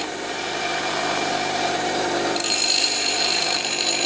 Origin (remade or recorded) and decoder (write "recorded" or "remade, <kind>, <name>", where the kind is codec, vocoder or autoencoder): remade, vocoder, BigVGAN v2